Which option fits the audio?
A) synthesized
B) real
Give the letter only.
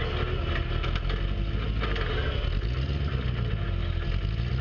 B